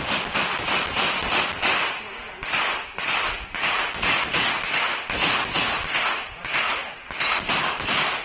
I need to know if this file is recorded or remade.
recorded